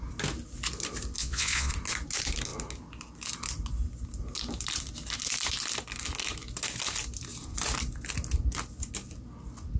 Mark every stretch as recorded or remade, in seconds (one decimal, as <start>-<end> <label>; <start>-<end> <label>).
0.0-1.2 recorded; 1.2-1.7 remade; 1.7-9.8 recorded